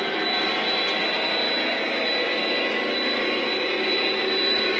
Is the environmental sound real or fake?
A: real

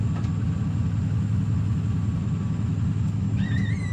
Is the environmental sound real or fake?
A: real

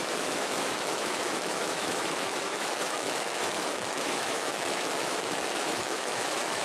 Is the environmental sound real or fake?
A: fake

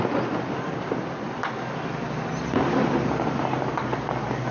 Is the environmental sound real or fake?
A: real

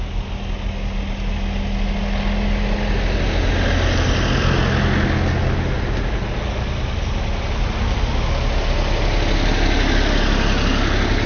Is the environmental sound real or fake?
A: real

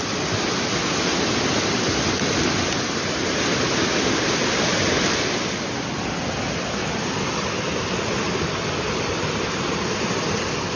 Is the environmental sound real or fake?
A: real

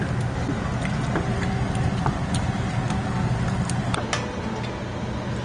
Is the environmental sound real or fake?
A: real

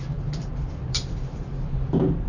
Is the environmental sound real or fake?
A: fake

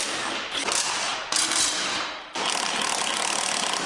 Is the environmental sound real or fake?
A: real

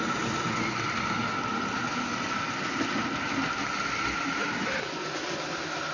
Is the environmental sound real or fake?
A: real